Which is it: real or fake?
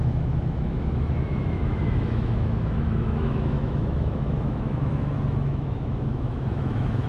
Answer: fake